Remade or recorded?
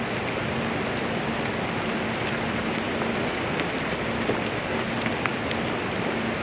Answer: recorded